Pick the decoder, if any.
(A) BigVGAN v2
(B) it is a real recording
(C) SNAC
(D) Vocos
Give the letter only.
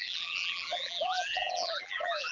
A